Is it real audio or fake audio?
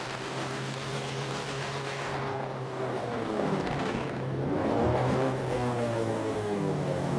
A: fake